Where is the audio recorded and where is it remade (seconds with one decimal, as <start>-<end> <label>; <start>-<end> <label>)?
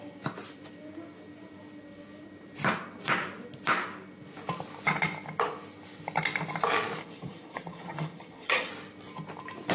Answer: 0.0-7.0 recorded; 7.0-8.7 remade; 8.7-9.7 recorded